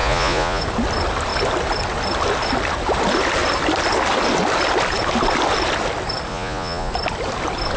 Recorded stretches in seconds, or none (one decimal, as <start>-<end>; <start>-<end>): 0.6-6.3; 6.9-7.8